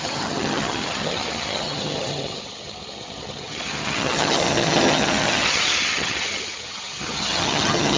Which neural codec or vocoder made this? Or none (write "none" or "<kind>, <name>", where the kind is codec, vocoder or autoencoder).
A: vocoder, HiFi-GAN